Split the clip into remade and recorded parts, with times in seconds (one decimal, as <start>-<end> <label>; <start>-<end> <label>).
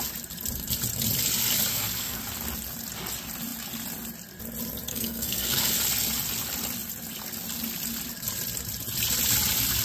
0.0-1.7 recorded; 1.7-2.2 remade; 2.2-4.9 recorded; 4.9-5.6 remade; 5.6-9.8 recorded